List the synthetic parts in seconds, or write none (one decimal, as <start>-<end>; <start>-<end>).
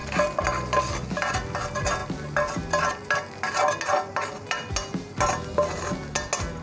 none